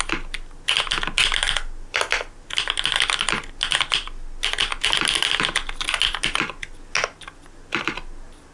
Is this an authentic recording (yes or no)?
yes